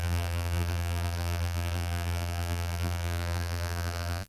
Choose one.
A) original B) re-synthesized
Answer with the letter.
B